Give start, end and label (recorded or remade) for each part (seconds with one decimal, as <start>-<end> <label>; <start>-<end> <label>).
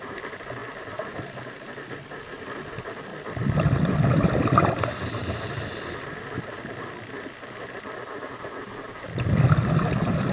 0.0-0.6 recorded; 0.6-1.1 remade; 1.1-3.1 recorded; 3.1-4.7 remade; 4.7-10.3 recorded